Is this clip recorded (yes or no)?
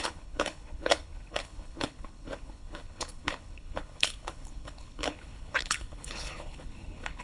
no